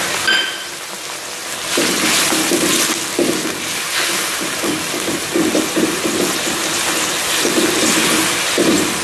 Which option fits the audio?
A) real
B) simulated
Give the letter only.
A